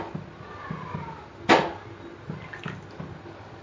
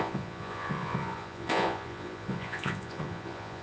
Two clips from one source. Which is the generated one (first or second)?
second